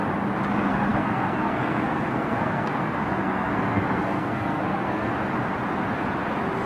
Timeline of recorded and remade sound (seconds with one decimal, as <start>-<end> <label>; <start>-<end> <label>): 0.0-0.5 recorded; 0.5-5.1 remade; 5.1-6.7 recorded